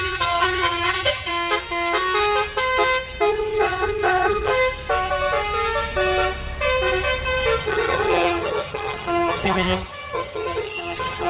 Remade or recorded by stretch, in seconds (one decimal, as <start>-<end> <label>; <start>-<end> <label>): 0.0-1.3 remade; 1.3-3.3 recorded; 3.3-4.5 remade; 4.5-7.6 recorded; 7.6-11.3 remade